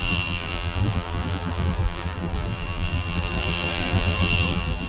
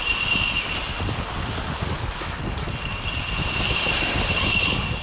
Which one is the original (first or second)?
second